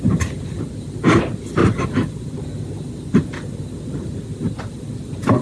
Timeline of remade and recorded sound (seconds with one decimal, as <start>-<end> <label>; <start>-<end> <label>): 0.0-5.4 recorded